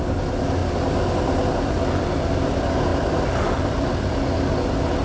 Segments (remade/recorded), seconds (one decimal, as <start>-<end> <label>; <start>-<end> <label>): 0.0-5.0 recorded